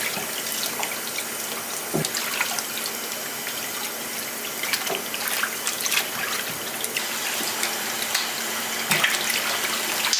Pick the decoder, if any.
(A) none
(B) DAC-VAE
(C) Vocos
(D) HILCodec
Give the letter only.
A